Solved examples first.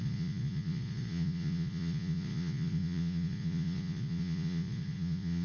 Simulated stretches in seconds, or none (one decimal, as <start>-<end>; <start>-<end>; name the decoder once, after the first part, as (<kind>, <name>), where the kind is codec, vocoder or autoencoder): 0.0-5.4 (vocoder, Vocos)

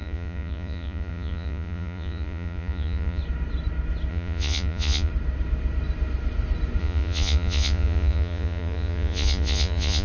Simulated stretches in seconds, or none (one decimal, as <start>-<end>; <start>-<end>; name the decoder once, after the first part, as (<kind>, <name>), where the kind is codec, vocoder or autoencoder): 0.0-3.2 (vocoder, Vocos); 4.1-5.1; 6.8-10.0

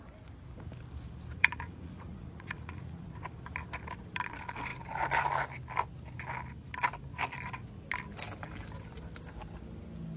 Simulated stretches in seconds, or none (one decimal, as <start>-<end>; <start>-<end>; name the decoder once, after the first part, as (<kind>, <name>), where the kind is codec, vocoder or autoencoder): 1.4-3.2 (vocoder, Vocos)

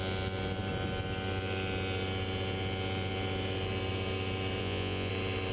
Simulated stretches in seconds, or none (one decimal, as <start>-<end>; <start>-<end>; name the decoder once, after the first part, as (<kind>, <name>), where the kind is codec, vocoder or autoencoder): 4.6-5.1 (vocoder, Vocos)